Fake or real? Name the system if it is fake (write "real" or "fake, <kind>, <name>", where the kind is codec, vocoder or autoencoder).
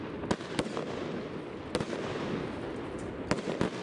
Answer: real